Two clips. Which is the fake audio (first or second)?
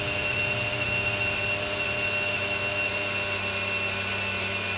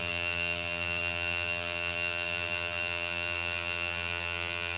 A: second